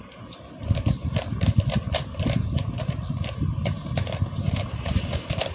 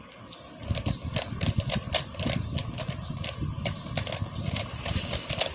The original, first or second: second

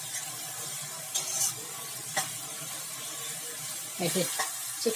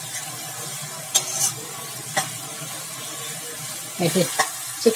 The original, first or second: second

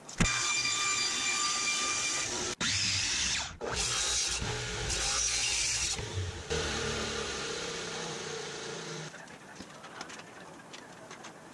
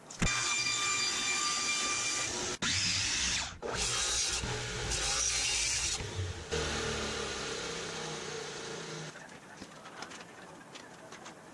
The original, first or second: second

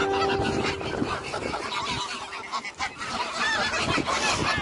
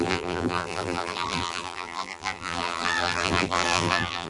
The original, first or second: first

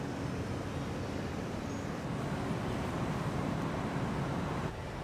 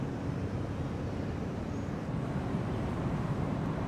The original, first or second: first